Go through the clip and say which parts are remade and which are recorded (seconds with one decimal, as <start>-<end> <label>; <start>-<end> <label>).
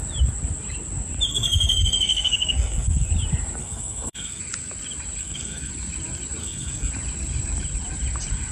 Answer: 0.0-1.3 recorded; 1.3-3.1 remade; 3.1-3.6 recorded; 3.6-4.4 remade; 4.4-5.2 recorded; 5.2-5.7 remade; 5.7-6.4 recorded; 6.4-6.9 remade; 6.9-8.5 recorded